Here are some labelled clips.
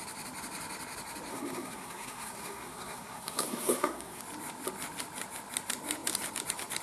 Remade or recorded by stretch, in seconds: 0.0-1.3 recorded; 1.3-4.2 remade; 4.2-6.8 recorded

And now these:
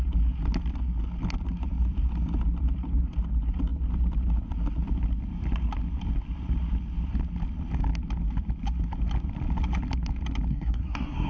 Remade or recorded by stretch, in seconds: 0.0-10.5 recorded; 10.5-11.3 remade

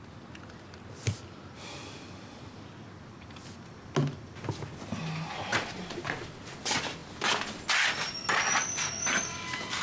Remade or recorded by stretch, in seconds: 0.0-9.8 recorded

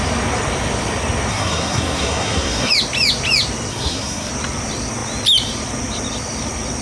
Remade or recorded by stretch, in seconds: 0.0-1.3 recorded; 1.3-2.7 remade; 2.7-3.7 recorded; 3.7-4.3 remade; 4.3-6.8 recorded

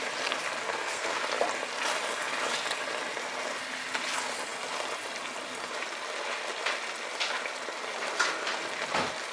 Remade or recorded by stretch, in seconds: 0.0-0.7 recorded; 0.7-1.2 remade; 1.2-9.3 recorded

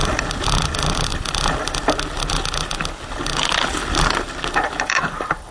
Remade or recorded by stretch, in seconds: 0.0-5.5 recorded

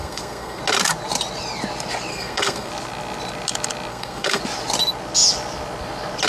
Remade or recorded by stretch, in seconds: 0.0-0.6 remade; 0.6-2.1 recorded; 2.1-2.7 remade; 2.7-3.9 recorded; 3.9-4.4 remade; 4.4-6.3 recorded